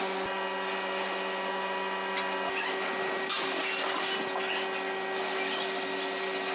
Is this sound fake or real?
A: real